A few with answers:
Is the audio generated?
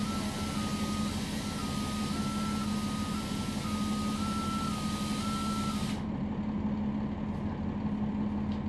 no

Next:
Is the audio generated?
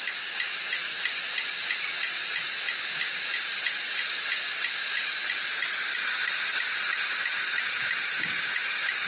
no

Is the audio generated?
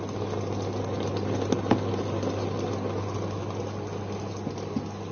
no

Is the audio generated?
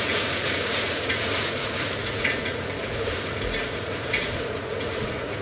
yes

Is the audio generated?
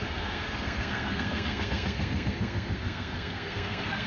yes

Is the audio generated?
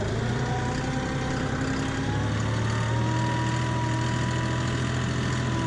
no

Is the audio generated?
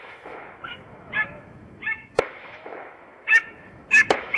yes